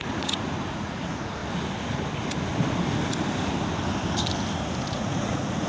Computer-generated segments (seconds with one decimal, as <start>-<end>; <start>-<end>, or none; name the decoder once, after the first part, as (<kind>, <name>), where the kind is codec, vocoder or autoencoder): 0.0-1.4 (vocoder, Vocos); 4.8-5.7